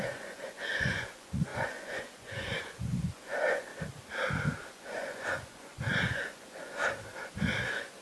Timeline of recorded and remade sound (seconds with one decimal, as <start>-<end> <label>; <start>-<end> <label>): 0.0-3.7 remade; 3.7-4.7 recorded; 4.7-6.8 remade; 6.8-7.6 recorded; 7.6-8.0 remade